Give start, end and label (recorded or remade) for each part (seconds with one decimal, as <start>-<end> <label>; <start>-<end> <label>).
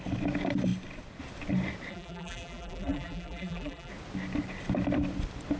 0.0-1.9 recorded; 1.9-3.9 remade; 3.9-5.6 recorded